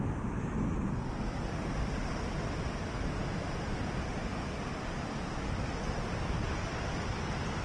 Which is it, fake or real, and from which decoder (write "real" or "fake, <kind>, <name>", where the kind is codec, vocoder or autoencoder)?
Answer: real